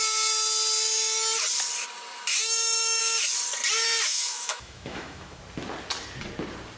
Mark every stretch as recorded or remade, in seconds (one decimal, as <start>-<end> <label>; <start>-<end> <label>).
0.0-2.3 recorded; 2.3-3.0 remade; 3.0-4.1 recorded; 4.1-5.4 remade; 5.4-6.8 recorded